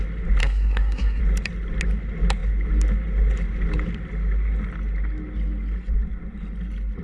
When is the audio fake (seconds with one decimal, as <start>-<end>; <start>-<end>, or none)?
0.4-1.2